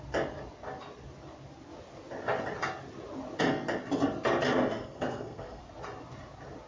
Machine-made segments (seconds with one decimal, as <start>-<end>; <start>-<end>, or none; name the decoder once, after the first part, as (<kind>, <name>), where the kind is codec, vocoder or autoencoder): 4.7-5.6 (codec, SNAC)